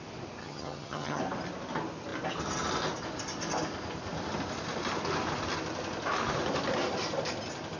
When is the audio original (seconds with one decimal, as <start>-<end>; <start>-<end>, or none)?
0.0-0.4; 1.2-7.8